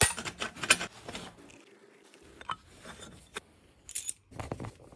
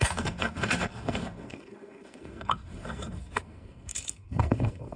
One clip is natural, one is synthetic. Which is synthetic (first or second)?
second